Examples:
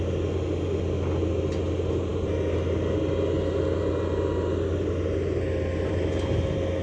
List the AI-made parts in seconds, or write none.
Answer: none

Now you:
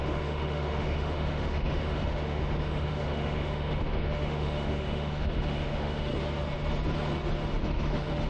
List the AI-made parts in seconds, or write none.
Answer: 0.0-6.1 (autoencoder, DAC-VAE); 7.5-8.3